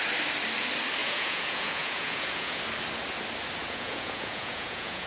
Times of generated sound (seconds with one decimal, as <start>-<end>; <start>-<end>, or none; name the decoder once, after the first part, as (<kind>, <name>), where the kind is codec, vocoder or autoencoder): 1.0-2.6 (vocoder, Vocos); 3.6-5.1